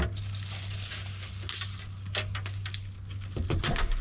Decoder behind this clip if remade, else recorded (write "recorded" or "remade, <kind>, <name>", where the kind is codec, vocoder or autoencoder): recorded